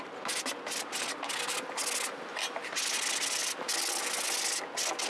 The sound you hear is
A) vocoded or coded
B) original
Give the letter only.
B